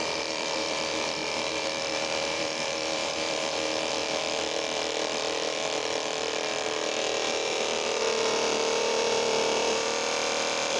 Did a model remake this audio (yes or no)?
yes